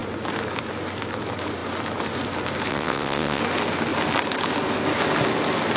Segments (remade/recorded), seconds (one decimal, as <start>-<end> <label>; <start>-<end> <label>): 0.0-2.7 recorded; 2.7-3.4 remade; 3.4-5.8 recorded